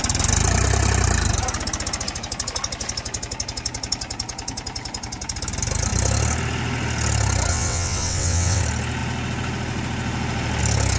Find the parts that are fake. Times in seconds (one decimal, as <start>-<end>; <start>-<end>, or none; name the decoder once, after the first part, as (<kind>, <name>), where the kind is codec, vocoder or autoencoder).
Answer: 7.5-8.6 (vocoder, WaveNeXt)